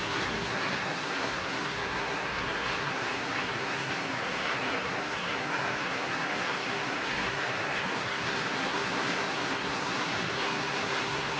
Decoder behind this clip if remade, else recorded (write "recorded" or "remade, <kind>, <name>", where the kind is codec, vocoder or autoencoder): remade, codec, SNAC